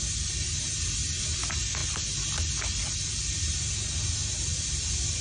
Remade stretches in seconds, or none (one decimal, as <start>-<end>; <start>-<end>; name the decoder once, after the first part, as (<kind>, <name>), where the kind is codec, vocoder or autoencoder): none